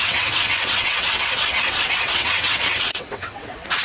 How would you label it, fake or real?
fake